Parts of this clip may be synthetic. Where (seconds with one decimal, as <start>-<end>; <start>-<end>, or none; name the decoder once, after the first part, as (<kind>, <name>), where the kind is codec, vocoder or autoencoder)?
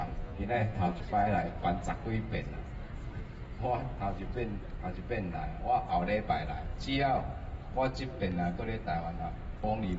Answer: 0.0-1.0 (vocoder, Vocos)